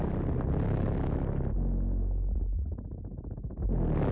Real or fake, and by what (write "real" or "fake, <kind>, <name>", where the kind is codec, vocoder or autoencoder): real